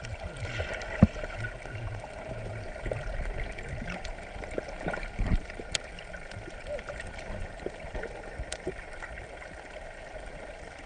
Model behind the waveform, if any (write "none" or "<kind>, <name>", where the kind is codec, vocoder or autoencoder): none